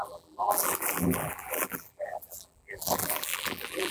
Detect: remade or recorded remade